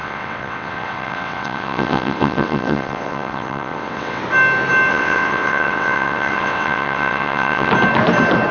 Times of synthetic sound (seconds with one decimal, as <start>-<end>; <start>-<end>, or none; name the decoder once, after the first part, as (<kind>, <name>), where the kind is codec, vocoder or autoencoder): 0.0-4.2 (vocoder, WaveNeXt); 4.9-7.7